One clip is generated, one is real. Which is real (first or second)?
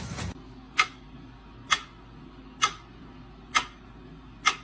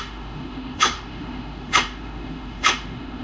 first